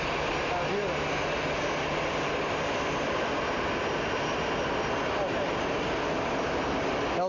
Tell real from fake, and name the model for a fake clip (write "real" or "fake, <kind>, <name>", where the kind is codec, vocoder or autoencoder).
real